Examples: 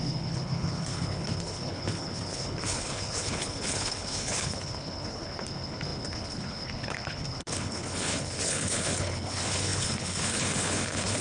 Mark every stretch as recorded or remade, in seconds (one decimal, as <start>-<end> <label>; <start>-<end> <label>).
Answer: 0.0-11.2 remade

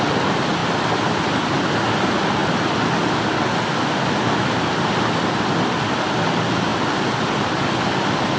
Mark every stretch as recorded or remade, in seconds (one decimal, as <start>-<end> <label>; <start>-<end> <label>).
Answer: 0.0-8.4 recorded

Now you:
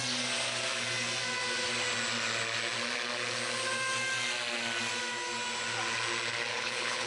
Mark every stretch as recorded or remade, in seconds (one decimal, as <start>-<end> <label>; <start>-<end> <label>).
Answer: 0.0-6.5 recorded; 6.5-7.1 remade

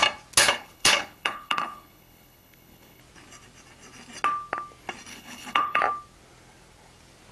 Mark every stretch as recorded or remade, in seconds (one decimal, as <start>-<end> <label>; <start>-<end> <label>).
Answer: 0.0-0.4 recorded; 0.4-3.0 remade; 3.0-5.1 recorded; 5.1-5.8 remade; 5.8-7.3 recorded

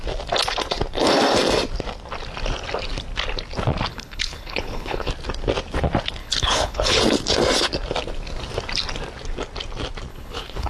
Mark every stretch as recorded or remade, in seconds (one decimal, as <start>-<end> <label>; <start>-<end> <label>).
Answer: 0.0-3.9 recorded; 3.9-5.1 remade; 5.1-6.2 recorded; 6.2-7.0 remade; 7.0-10.1 recorded; 10.1-10.7 remade

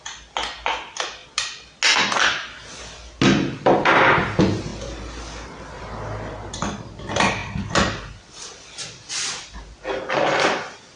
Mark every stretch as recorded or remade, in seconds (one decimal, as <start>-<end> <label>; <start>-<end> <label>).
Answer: 0.0-11.0 recorded